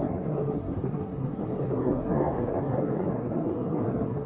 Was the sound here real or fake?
fake